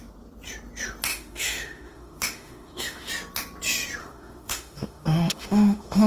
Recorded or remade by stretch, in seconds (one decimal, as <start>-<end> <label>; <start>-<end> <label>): 0.0-1.1 recorded; 1.1-3.1 remade; 3.1-4.0 recorded; 4.0-6.1 remade